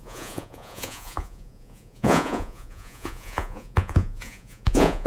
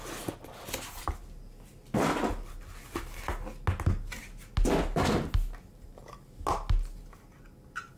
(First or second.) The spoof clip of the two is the first